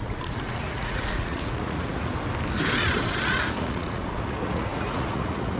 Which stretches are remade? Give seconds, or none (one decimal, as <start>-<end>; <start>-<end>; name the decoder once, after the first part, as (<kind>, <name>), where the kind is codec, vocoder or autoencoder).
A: 0.0-2.1 (vocoder, Vocos); 3.2-5.6